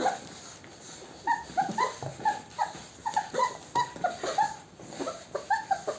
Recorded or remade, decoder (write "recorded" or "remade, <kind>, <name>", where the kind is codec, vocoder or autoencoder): recorded